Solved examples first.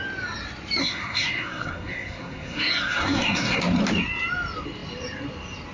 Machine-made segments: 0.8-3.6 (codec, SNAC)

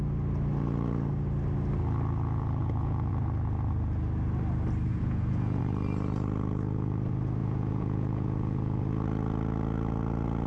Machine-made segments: 2.6-3.1 (vocoder, Vocos); 4.9-5.6; 7.4-8.8

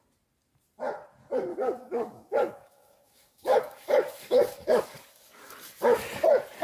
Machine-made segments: 1.5-5.5 (codec, DAC)

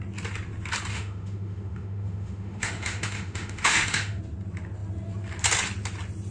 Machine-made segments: 0.9-4.2 (autoencoder, DAC-VAE)